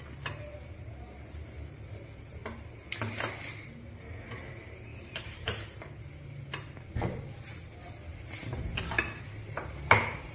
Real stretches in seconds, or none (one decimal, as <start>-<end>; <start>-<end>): 0.0-4.9; 5.9-10.3